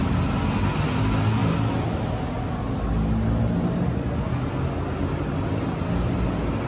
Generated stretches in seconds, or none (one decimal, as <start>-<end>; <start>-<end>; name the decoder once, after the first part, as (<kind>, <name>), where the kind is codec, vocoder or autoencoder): none